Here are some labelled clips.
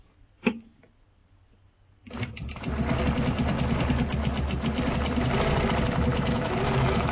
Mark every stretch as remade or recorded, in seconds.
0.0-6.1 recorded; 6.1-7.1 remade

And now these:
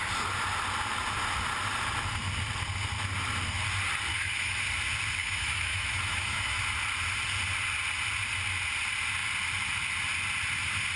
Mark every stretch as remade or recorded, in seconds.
0.0-4.1 recorded; 4.1-4.6 remade; 4.6-5.2 recorded; 5.2-6.6 remade; 6.6-11.0 recorded